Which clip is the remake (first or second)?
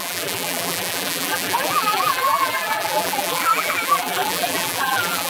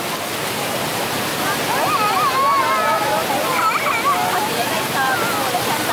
first